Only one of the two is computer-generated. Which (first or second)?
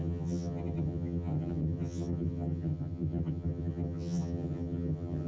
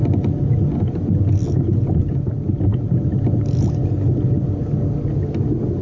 first